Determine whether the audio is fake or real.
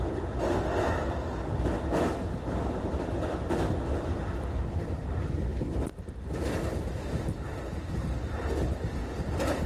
real